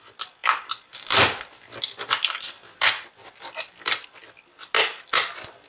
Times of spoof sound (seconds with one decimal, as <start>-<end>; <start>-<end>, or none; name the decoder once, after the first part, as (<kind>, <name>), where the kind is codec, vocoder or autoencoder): 0.4-3.8 (vocoder, BigVGAN v2)